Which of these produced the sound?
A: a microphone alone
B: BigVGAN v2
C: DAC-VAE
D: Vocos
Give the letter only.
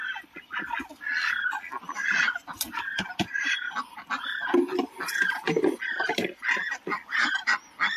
A